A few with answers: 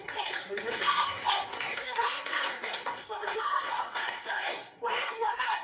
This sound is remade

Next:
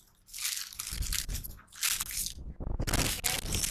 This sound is recorded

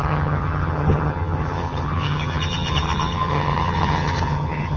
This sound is remade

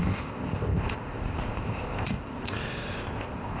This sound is remade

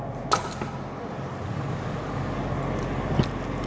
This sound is recorded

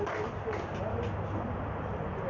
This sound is recorded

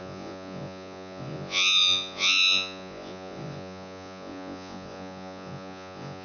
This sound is remade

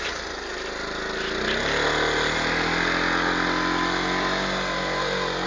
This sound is recorded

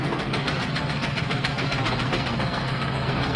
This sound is remade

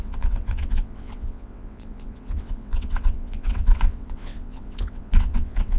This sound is remade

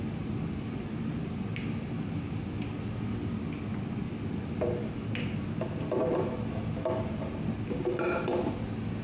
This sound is recorded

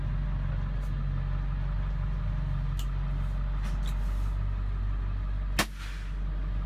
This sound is recorded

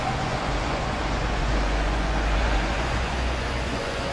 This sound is remade